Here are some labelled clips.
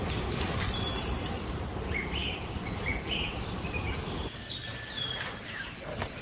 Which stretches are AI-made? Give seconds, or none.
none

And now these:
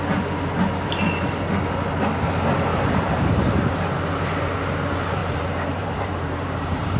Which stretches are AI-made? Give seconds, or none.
2.7-3.7 (vocoder, BigVGAN v2); 5.2-7.0